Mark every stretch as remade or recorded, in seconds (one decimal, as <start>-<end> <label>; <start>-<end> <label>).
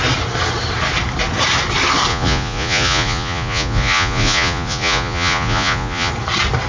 0.0-2.1 recorded; 2.1-6.1 remade; 6.1-6.7 recorded